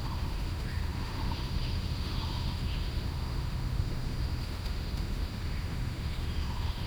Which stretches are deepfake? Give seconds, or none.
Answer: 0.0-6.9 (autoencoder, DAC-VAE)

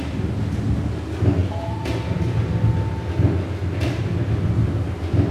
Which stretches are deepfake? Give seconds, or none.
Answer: none

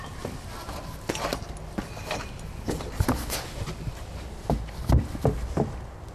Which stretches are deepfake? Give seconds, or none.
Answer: none

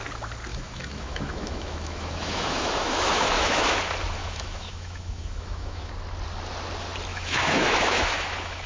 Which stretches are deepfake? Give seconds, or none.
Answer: 0.5-3.8 (autoencoder, DAC-VAE); 4.2-5.9; 7.1-8.7